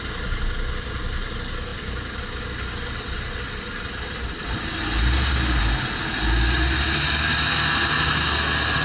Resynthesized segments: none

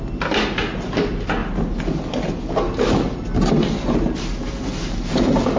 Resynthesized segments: none

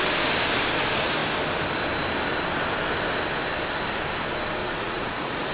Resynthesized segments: 4.6-5.5 (vocoder, Vocos)